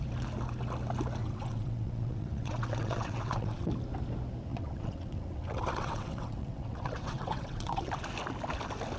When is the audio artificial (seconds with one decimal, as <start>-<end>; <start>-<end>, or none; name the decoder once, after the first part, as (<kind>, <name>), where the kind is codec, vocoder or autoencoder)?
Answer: 1.2-3.7 (vocoder, WaveNeXt); 4.5-7.9